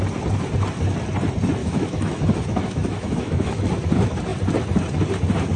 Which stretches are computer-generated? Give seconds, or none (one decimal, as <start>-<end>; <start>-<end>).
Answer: 1.6-3.6